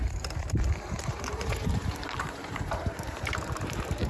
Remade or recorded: remade